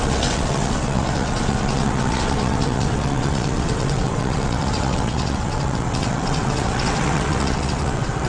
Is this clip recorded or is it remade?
remade